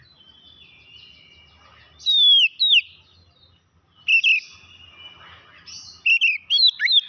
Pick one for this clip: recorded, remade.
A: recorded